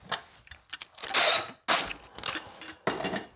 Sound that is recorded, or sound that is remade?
recorded